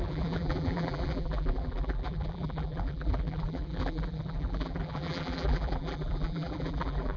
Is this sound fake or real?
fake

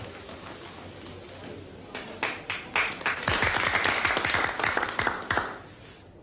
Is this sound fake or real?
real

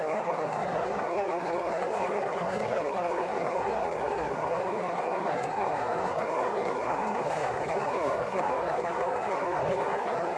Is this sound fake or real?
fake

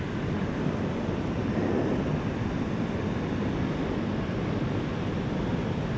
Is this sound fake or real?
real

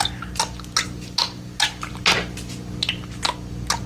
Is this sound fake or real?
real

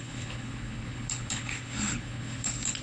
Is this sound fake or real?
fake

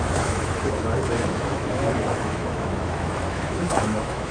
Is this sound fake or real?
fake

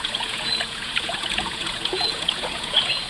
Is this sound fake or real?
fake